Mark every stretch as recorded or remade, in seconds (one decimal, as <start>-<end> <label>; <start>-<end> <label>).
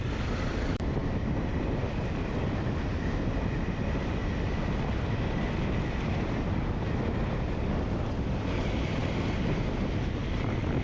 0.0-1.0 remade; 1.0-5.6 recorded; 5.6-10.8 remade